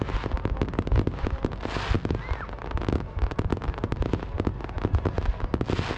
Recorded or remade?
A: recorded